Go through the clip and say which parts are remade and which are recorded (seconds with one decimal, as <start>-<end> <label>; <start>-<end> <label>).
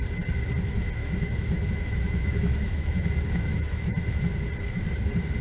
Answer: 0.0-1.0 recorded; 1.0-4.2 remade; 4.2-5.4 recorded